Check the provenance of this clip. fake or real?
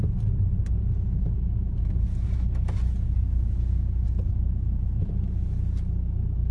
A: real